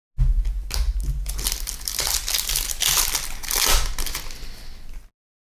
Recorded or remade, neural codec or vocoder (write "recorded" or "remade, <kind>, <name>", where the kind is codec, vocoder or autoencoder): recorded